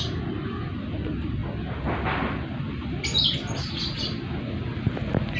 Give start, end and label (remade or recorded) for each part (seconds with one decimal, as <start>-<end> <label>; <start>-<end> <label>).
0.0-5.4 recorded